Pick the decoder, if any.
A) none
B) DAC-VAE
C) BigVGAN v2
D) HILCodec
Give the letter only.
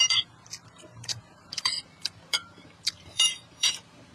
C